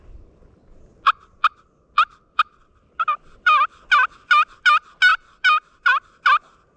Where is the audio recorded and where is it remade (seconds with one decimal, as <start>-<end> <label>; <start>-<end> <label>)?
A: 0.0-6.8 recorded